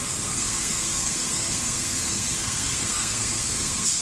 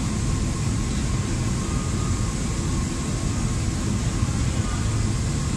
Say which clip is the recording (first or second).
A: second